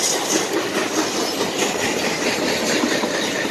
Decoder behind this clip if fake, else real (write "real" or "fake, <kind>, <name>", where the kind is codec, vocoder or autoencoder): real